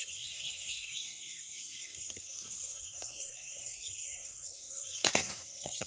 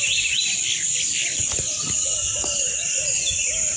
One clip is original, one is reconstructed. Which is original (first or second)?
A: second